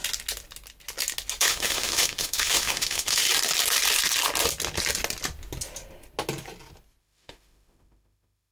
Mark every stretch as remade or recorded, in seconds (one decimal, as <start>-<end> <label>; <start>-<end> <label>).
0.0-1.4 recorded; 1.4-3.2 remade; 3.2-7.0 recorded; 7.0-8.5 remade